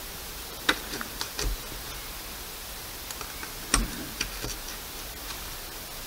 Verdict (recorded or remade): recorded